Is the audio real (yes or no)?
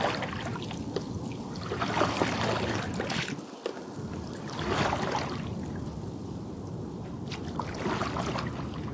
yes